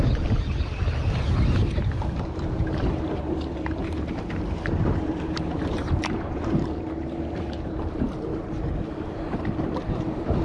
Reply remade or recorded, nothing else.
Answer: remade